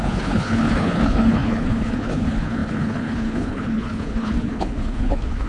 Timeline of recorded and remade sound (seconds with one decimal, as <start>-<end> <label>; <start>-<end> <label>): 0.0-5.5 remade